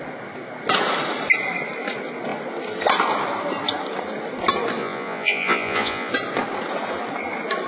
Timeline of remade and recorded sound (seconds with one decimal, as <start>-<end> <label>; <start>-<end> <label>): 0.0-4.8 recorded; 4.8-6.1 remade; 6.1-7.7 recorded